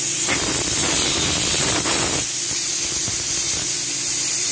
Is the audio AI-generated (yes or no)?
yes